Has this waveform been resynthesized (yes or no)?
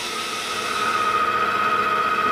no